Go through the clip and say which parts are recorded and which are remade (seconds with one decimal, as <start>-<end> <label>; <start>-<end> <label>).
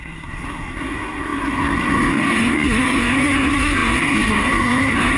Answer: 0.0-5.2 remade